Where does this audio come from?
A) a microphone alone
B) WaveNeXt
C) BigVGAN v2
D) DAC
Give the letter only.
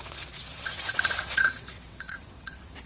B